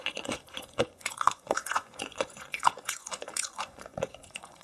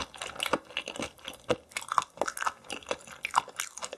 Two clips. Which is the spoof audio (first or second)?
first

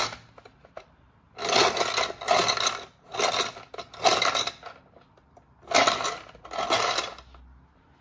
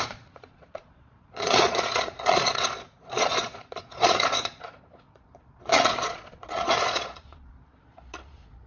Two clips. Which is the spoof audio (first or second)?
second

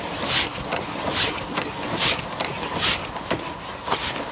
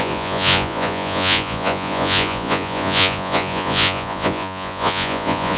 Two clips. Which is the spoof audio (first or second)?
second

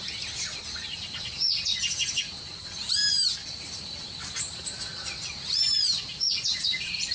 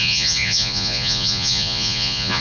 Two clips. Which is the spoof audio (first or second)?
second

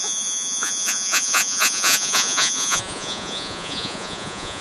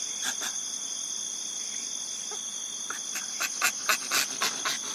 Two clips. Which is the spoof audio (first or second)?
first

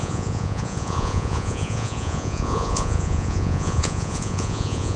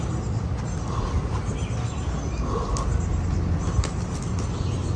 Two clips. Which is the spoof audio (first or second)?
first